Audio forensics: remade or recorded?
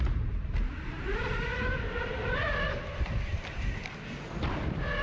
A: recorded